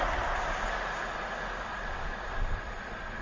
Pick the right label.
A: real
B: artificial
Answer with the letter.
A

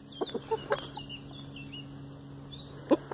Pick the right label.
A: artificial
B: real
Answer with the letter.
B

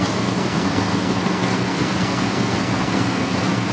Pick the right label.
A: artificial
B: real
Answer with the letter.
A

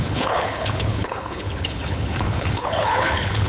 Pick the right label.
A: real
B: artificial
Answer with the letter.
B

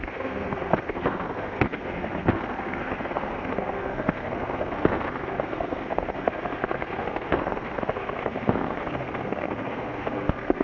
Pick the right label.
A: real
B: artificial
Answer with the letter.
B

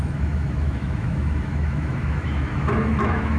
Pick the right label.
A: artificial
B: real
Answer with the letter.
A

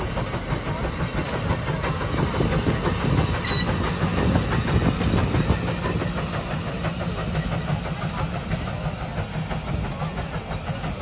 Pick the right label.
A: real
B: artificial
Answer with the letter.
A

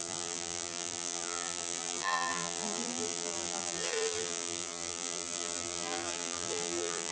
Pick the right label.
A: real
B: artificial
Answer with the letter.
B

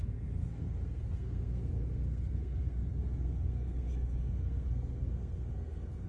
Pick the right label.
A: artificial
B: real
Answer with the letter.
A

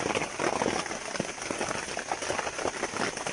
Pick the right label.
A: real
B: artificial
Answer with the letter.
A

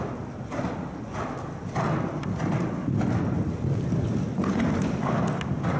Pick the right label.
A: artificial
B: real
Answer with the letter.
B